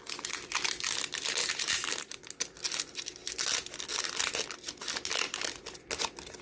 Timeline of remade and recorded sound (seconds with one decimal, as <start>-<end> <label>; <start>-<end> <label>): 0.0-1.4 recorded; 1.4-2.2 remade; 2.2-6.4 recorded